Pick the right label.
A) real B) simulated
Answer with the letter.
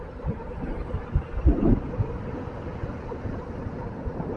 A